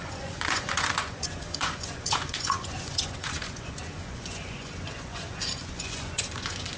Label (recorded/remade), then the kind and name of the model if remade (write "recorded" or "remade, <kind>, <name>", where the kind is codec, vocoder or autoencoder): remade, vocoder, Vocos